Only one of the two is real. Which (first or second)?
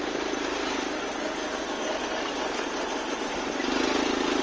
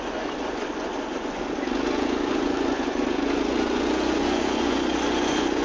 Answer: first